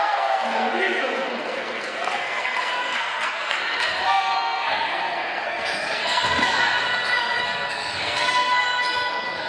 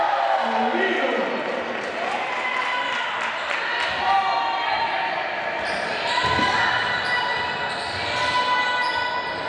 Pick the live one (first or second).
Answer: second